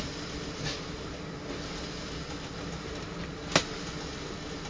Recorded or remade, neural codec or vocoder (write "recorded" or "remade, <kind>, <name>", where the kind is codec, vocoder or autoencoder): recorded